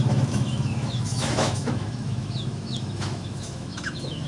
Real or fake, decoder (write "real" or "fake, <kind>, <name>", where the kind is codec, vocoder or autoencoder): fake, autoencoder, DAC-VAE